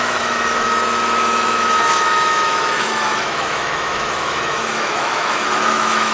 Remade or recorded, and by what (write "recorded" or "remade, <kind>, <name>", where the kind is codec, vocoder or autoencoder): remade, autoencoder, DAC-VAE